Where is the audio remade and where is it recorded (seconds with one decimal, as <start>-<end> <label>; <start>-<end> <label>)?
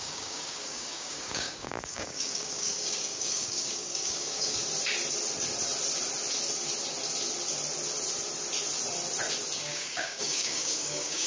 0.0-4.6 remade; 4.6-9.7 recorded; 9.7-11.3 remade